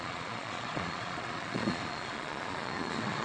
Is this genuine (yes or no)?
no